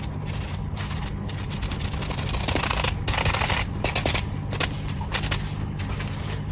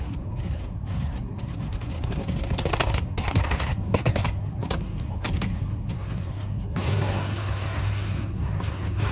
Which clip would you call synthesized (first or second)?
second